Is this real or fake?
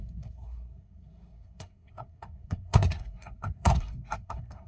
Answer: fake